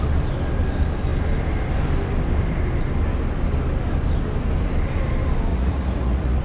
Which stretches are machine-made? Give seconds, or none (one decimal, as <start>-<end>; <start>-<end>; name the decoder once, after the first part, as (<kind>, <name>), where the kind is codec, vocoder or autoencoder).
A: 5.5-6.4 (vocoder, Vocos)

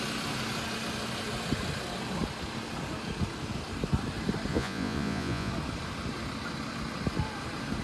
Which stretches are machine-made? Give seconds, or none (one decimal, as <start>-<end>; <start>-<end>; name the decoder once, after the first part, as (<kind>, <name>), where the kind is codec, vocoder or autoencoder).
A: 4.5-5.5 (vocoder, Vocos)

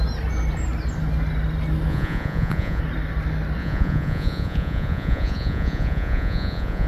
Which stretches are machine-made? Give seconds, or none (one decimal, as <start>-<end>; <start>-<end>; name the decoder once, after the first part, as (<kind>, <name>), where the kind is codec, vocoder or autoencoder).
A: 1.9-2.8 (vocoder, Vocos); 3.6-6.9

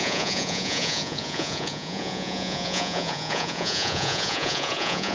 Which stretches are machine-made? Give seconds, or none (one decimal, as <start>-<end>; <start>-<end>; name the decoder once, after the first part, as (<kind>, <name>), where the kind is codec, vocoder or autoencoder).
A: 0.0-5.1 (vocoder, Vocos)

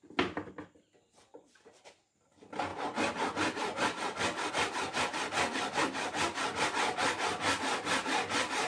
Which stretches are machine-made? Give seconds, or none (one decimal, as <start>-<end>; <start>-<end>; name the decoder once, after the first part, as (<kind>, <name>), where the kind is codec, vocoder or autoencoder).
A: none

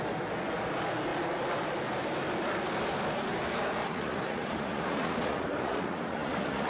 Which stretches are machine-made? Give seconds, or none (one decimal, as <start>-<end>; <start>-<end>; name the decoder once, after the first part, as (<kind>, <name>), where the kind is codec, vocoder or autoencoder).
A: 3.8-6.7 (vocoder, Vocos)

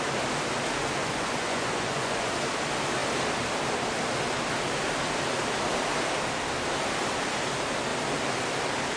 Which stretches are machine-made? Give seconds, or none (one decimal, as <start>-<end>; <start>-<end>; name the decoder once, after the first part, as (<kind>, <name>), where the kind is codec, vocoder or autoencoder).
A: 1.0-2.3 (vocoder, Vocos)

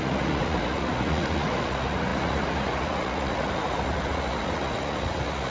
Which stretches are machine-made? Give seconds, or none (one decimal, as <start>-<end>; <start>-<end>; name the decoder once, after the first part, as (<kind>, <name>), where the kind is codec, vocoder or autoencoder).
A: 0.0-5.5 (vocoder, Vocos)